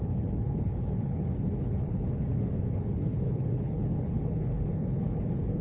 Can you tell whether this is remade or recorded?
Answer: remade